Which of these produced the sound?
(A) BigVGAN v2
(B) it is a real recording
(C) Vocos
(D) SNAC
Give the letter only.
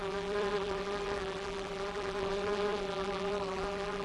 A